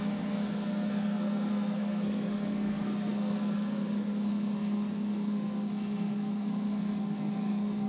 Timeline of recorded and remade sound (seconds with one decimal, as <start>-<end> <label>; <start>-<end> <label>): 0.0-7.9 remade